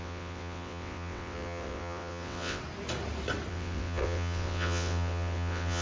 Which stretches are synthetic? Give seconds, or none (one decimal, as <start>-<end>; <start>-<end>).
0.0-2.6; 3.5-5.8